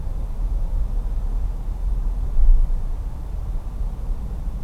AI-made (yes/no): yes